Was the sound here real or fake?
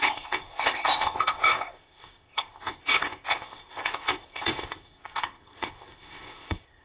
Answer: fake